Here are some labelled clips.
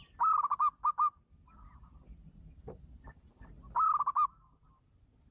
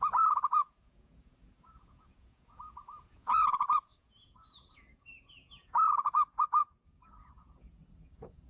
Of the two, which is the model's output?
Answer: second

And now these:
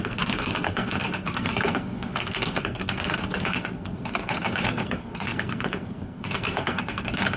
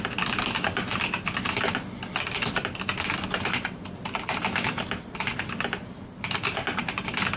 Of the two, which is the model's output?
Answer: first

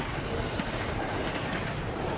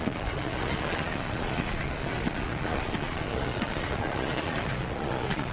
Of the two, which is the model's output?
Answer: second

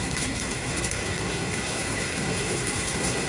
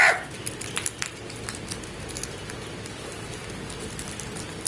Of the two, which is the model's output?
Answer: first